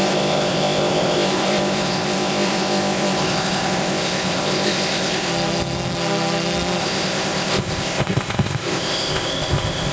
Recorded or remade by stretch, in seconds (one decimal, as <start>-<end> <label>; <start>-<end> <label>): 0.0-5.3 remade; 5.3-6.8 recorded; 6.8-9.9 remade